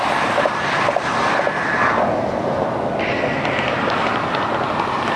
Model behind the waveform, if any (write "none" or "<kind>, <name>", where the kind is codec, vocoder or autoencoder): none